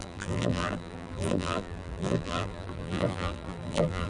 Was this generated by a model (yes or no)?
yes